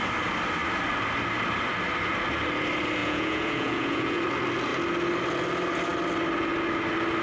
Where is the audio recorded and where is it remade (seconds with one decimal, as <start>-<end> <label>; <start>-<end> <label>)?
0.0-3.0 recorded; 3.0-4.2 remade; 4.2-7.2 recorded